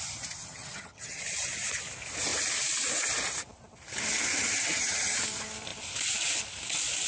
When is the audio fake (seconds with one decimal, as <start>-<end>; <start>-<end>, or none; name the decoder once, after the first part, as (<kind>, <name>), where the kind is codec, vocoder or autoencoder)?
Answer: 0.4-1.2 (vocoder, HiFi-GAN); 4.3-5.2